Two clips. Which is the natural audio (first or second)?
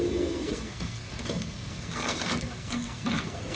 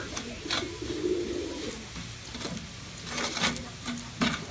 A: second